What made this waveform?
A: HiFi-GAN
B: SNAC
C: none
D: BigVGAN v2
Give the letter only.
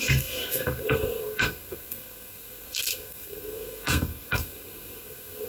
B